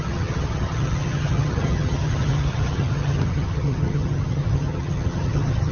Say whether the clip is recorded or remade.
remade